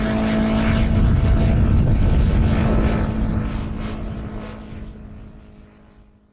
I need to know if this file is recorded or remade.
recorded